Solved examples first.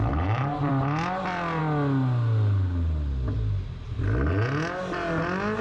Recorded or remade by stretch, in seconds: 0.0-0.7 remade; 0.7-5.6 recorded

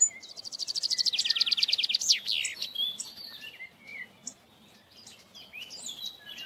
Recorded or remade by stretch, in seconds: 0.0-1.2 recorded; 1.2-1.7 remade; 1.7-6.5 recorded